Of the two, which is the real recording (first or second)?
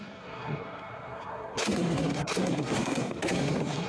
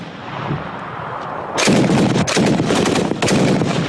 second